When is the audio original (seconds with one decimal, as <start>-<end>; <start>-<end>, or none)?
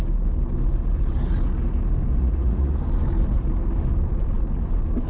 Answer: 0.0-2.2; 2.8-5.1